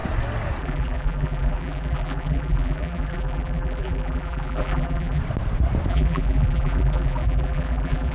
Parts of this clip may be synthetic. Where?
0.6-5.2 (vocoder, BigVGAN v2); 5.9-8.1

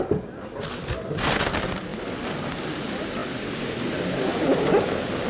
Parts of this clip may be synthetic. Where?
1.9-2.5 (vocoder, BigVGAN v2); 3.2-3.7

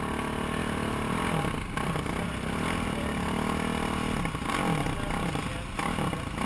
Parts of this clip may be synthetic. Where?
none